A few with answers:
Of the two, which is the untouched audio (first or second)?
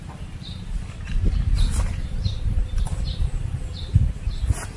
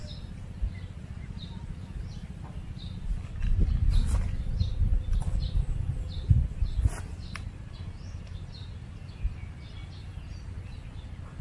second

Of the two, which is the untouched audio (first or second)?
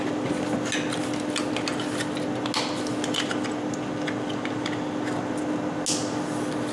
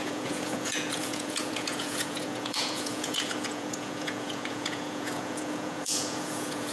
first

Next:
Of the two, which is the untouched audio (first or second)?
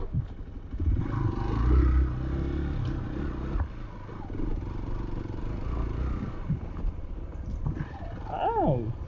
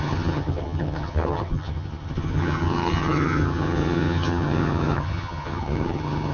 first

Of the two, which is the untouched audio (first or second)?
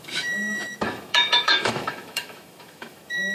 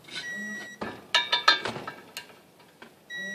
second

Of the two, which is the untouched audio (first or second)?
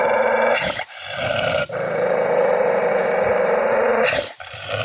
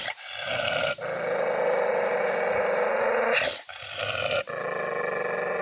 second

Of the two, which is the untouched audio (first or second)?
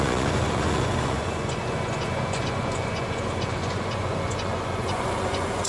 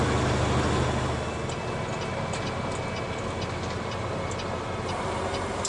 second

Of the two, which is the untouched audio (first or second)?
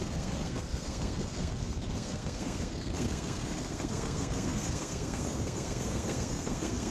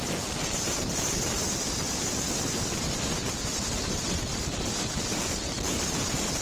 second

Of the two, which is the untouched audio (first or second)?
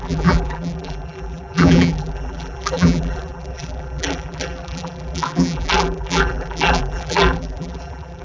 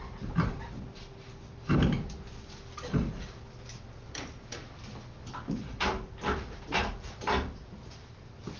second